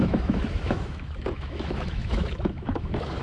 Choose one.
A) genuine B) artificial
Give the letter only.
B